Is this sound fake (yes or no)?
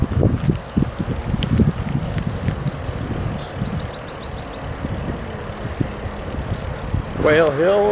no